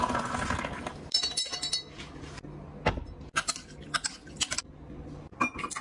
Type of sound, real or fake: real